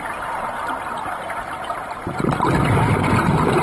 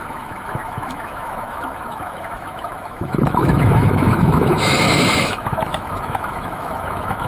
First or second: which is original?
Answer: first